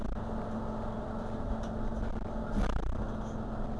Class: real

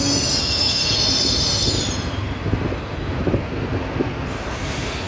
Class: real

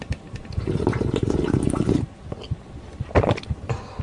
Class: real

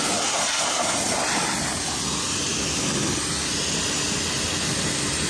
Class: real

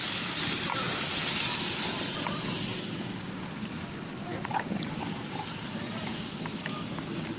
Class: real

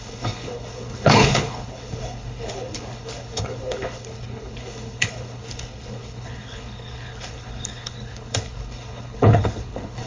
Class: fake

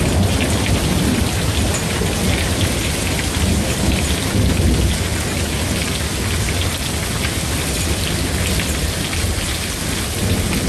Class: real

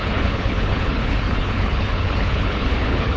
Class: fake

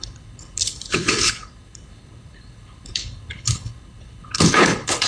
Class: fake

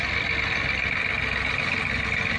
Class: real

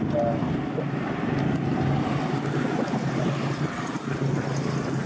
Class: real